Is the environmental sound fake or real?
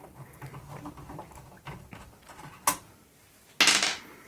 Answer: real